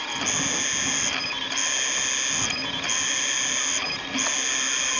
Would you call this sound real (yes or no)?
yes